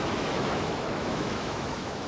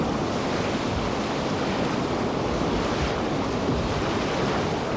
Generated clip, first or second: first